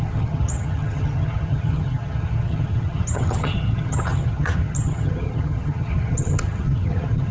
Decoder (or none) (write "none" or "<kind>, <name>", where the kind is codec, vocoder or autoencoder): vocoder, HiFi-GAN